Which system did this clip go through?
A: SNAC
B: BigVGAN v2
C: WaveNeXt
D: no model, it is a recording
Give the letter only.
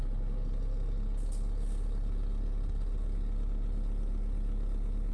D